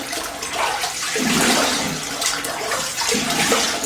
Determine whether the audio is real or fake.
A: real